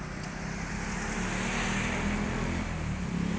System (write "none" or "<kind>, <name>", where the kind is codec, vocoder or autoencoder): none